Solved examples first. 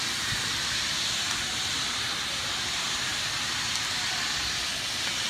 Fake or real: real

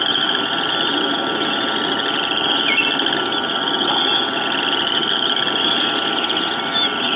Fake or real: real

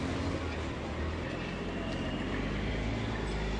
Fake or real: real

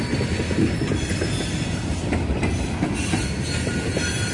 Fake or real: real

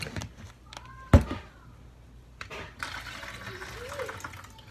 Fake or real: real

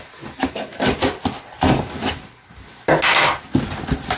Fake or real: real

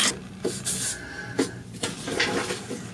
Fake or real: real